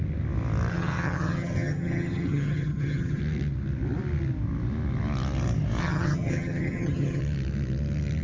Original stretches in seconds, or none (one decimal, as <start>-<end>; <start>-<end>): 0.0-0.7; 3.2-5.8; 7.2-8.2